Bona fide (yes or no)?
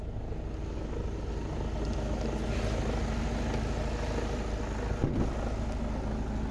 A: yes